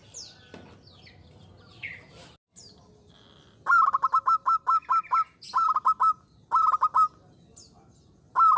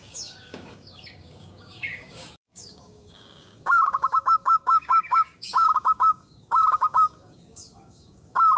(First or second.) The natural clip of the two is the first